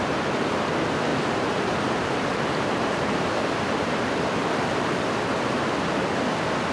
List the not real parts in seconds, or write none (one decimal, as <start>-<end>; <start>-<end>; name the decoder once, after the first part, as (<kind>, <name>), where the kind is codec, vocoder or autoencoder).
1.1-5.1 (vocoder, BigVGAN v2)